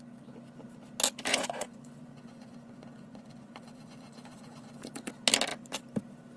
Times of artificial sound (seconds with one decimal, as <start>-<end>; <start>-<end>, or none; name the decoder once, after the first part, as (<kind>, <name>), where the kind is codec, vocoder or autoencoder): 1.3-5.1 (vocoder, Vocos)